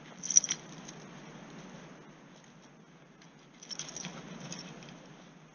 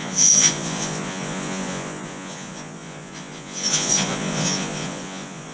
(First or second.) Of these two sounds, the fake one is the second